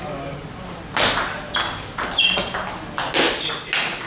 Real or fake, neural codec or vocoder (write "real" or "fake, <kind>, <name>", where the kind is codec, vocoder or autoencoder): real